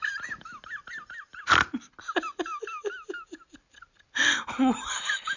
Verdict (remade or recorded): recorded